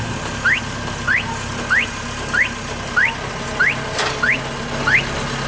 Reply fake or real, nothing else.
real